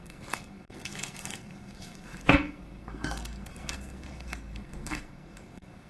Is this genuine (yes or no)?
no